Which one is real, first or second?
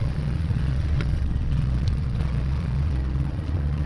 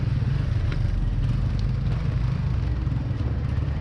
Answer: second